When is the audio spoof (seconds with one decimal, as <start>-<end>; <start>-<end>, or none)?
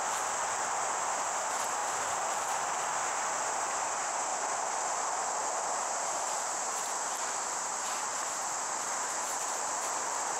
4.3-7.7